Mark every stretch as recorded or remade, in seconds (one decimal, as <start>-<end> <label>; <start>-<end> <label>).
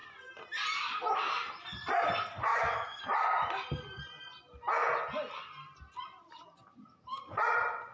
0.0-2.5 recorded; 2.5-3.0 remade; 3.0-7.9 recorded